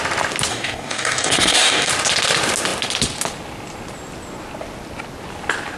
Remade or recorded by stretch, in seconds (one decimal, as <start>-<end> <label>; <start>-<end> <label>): 0.0-0.5 recorded; 0.5-1.9 remade; 1.9-5.8 recorded